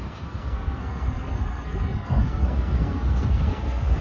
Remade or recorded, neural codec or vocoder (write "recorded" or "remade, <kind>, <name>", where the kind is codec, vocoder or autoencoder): remade, codec, SNAC